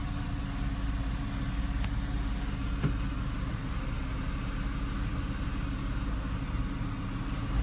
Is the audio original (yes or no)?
yes